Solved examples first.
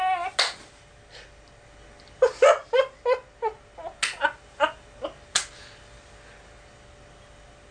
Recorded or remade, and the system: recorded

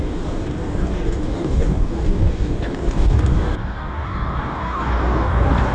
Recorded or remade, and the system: remade, codec, DAC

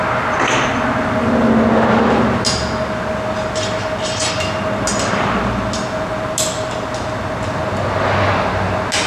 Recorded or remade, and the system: recorded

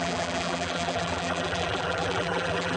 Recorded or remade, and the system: remade, vocoder, BigVGAN v2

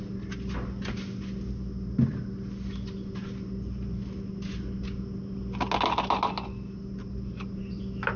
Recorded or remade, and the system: recorded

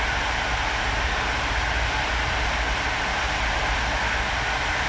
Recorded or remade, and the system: recorded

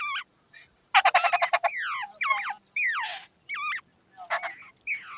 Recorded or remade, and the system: recorded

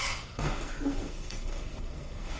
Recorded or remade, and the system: remade, codec, SNAC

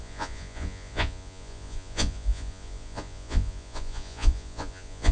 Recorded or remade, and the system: remade, vocoder, Vocos